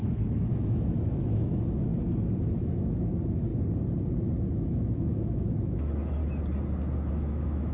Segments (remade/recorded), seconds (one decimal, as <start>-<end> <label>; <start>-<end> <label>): 0.0-1.9 remade; 1.9-2.6 recorded; 2.6-3.5 remade; 3.5-4.4 recorded; 4.4-6.2 remade; 6.2-7.1 recorded; 7.1-7.7 remade